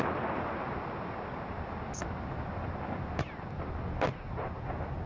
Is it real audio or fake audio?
real